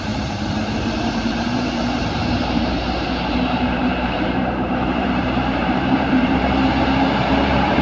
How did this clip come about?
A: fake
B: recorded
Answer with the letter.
A